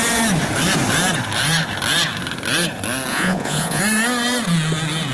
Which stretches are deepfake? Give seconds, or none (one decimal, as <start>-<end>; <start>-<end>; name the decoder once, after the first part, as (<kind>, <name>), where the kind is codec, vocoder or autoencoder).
3.1-3.8 (vocoder, Vocos)